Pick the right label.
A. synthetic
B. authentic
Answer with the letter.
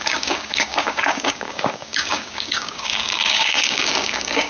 A